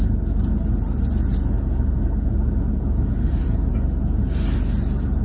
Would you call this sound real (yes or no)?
yes